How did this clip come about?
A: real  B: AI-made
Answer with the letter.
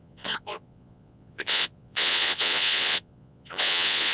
B